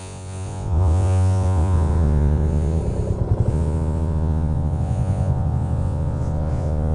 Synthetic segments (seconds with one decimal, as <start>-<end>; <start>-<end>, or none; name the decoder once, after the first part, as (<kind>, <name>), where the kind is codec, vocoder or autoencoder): 0.0-2.8 (vocoder, Vocos); 3.5-6.9